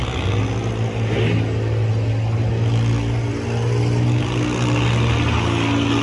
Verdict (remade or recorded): recorded